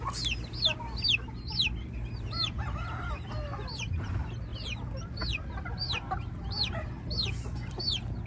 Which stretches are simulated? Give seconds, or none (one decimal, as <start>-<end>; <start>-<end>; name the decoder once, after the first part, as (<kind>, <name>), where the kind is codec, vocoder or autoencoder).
2.6-4.1 (vocoder, BigVGAN v2); 4.5-7.8